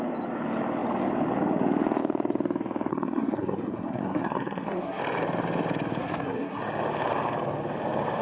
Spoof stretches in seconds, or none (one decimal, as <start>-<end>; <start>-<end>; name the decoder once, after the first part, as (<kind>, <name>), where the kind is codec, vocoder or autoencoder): 2.9-5.0 (codec, SNAC); 6.0-6.6